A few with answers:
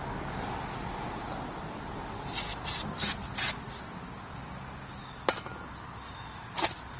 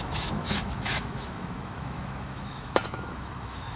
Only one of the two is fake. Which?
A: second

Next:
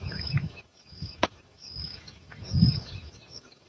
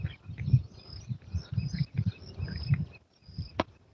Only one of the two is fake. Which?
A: first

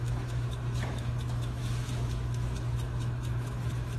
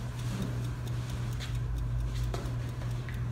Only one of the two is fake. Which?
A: first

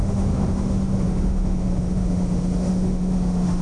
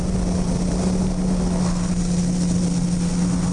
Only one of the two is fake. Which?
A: first